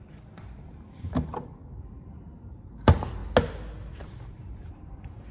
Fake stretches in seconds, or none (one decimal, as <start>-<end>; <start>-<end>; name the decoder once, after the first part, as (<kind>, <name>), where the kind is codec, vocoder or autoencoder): 0.0-3.2 (vocoder, BigVGAN v2); 3.9-5.3